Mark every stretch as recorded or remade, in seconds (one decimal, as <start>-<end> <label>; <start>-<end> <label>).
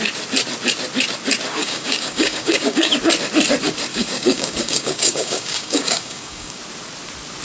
0.0-1.6 recorded; 1.6-2.9 remade; 2.9-3.9 recorded; 3.9-6.6 remade; 6.6-7.4 recorded